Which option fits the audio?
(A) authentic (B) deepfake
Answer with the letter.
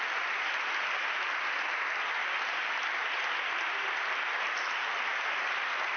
A